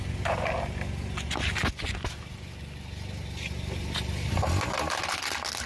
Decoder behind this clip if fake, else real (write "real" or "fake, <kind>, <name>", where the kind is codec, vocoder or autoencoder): real